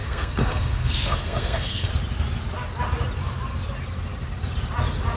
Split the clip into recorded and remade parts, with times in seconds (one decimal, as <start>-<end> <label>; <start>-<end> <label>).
0.0-1.9 remade; 1.9-5.2 recorded